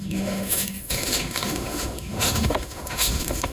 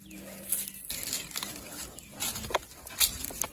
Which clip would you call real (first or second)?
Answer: second